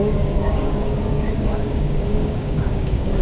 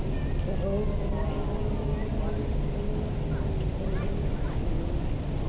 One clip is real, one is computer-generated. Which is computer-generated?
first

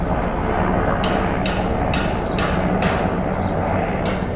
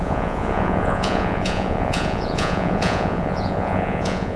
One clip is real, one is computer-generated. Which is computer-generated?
second